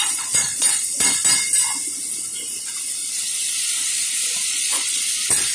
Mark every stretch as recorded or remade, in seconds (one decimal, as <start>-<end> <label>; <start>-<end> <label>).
0.0-1.0 remade; 1.0-4.5 recorded; 4.5-5.0 remade; 5.0-5.5 recorded